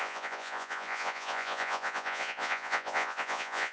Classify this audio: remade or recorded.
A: remade